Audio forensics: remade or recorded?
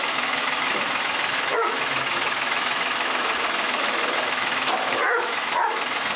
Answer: remade